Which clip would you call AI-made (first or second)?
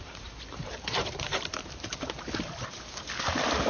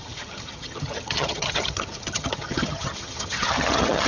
second